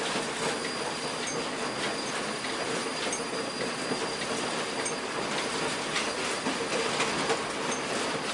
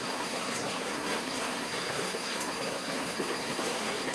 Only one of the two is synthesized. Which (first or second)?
second